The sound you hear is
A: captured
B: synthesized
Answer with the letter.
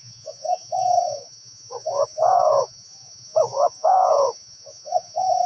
B